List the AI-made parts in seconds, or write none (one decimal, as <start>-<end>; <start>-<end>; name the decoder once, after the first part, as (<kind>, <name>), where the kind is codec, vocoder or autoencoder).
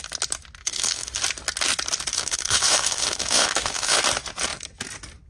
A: 0.6-1.2 (autoencoder, DAC-VAE); 2.1-4.0